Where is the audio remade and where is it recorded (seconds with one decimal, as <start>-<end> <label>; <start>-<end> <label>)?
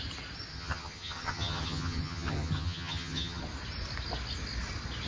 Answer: 0.0-0.5 recorded; 0.5-3.4 remade; 3.4-5.1 recorded